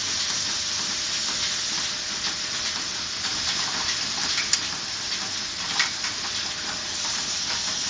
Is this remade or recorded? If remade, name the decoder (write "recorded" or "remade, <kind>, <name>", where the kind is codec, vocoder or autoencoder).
recorded